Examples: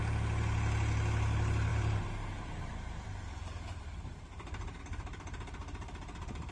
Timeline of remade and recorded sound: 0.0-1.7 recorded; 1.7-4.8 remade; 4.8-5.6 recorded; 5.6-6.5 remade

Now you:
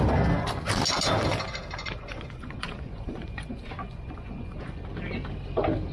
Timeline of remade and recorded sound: 0.0-1.8 recorded; 1.8-4.8 remade; 4.8-5.9 recorded

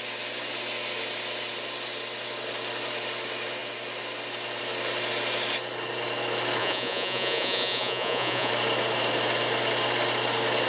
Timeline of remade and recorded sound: 0.0-6.6 recorded; 6.6-8.5 remade; 8.5-10.7 recorded

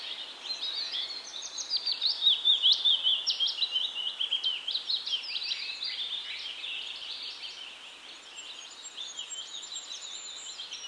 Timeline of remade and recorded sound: 0.0-1.3 recorded; 1.3-2.6 remade; 2.6-10.9 recorded